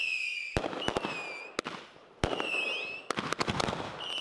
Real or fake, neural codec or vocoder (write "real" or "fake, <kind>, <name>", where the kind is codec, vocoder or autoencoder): real